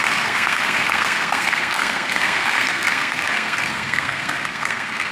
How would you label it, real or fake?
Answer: fake